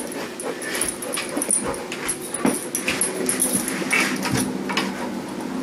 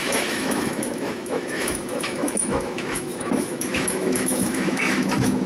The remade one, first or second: second